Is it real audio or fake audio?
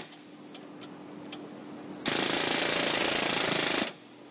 real